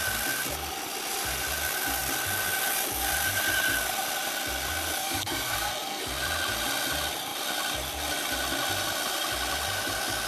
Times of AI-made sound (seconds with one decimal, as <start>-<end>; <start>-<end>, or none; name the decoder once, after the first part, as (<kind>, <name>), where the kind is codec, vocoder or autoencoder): 5.0-6.0 (codec, SNAC)